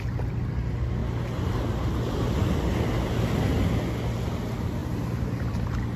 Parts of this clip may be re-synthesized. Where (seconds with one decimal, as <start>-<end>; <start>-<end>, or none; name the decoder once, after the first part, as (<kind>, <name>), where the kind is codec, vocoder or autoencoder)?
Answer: 4.8-5.5 (vocoder, BigVGAN v2)